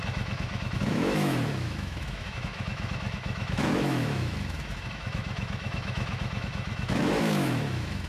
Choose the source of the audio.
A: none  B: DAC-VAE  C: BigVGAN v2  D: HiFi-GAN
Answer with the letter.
B